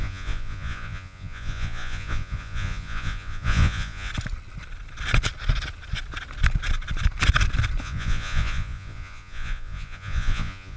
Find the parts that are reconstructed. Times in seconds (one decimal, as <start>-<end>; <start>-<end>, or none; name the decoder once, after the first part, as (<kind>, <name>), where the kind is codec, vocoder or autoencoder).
0.0-4.1 (vocoder, Vocos); 7.8-10.8